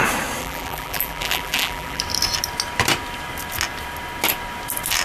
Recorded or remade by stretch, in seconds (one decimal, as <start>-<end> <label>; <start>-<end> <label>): 0.0-0.4 recorded; 0.4-2.0 remade; 2.0-5.0 recorded